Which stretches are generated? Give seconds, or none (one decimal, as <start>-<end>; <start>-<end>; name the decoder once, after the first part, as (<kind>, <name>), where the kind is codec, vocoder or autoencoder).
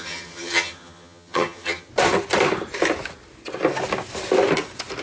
0.0-1.9 (vocoder, HiFi-GAN)